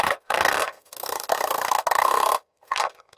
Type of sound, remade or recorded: remade